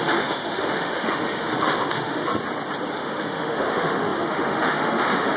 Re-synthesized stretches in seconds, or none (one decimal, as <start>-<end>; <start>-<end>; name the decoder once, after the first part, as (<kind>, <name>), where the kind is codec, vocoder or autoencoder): 0.0-2.3 (autoencoder, DAC-VAE); 2.9-5.4